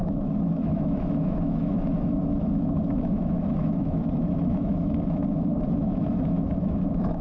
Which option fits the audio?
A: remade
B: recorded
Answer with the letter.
A